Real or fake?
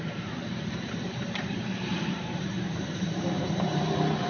fake